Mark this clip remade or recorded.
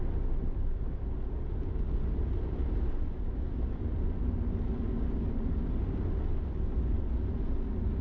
recorded